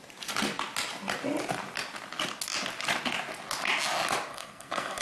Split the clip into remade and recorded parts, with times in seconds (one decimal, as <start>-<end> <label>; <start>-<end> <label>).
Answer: 0.0-4.3 recorded; 4.3-5.0 remade